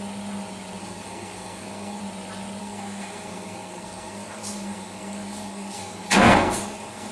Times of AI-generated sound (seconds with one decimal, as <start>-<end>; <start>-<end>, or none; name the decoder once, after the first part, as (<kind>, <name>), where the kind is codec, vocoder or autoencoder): 0.8-2.0 (codec, SNAC); 2.6-7.1